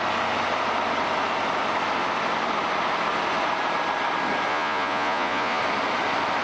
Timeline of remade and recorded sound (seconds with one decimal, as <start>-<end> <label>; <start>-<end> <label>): 0.0-4.5 recorded; 4.5-5.6 remade; 5.6-6.4 recorded

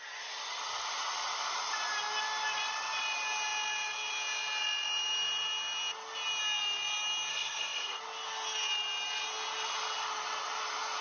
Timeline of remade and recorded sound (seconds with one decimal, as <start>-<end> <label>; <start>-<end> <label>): 0.0-7.3 recorded; 7.3-8.0 remade; 8.0-11.0 recorded

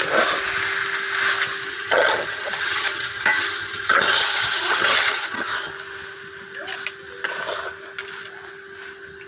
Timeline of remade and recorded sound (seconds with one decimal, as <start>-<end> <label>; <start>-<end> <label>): 0.0-1.7 recorded; 1.7-5.7 remade; 5.7-9.3 recorded

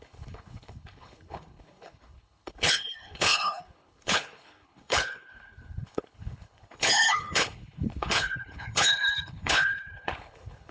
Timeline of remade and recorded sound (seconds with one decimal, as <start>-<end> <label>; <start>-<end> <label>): 0.0-10.7 remade

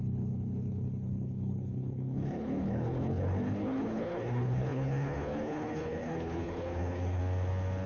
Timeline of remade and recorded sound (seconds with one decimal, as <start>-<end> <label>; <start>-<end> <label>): 0.0-7.2 remade; 7.2-7.9 recorded

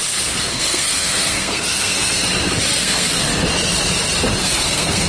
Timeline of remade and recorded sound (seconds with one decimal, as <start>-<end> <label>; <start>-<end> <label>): 0.0-0.5 recorded; 0.5-2.2 remade; 2.2-2.8 recorded; 2.8-3.3 remade; 3.3-4.4 recorded; 4.4-5.1 remade

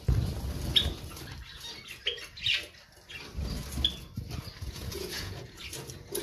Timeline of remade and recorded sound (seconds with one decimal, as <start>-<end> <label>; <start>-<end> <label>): 0.0-4.6 recorded; 4.6-5.6 remade; 5.6-6.2 recorded